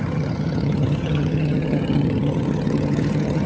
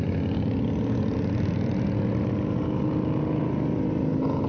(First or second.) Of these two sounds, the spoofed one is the first